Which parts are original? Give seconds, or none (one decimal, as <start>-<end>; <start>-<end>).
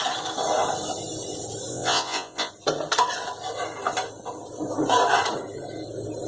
0.0-1.7; 2.5-6.3